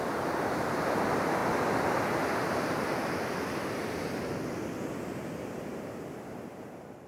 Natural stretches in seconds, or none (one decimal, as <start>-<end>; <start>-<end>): 1.4-5.7